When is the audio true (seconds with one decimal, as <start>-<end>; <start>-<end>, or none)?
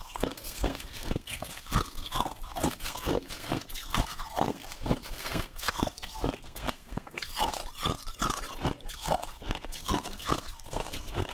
7.6-8.9